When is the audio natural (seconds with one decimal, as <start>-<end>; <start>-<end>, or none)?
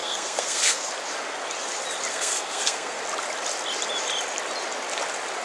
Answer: 0.9-2.1; 3.0-5.4